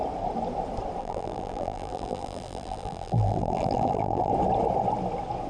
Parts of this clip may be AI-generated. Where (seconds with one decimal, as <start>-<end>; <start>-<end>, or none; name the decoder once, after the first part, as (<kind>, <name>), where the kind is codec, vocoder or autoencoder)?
1.0-4.3 (vocoder, BigVGAN v2)